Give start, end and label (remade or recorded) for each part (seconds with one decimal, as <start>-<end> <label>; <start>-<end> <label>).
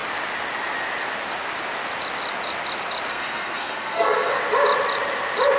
0.0-3.1 recorded; 3.1-4.4 remade; 4.4-5.6 recorded